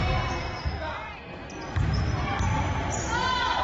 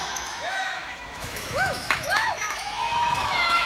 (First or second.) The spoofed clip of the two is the second